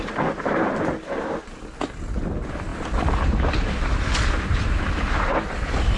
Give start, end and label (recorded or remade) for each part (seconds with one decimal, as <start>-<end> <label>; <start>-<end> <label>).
0.0-6.0 recorded